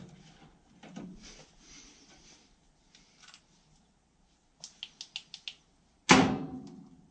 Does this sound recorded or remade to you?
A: recorded